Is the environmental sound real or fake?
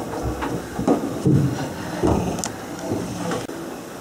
real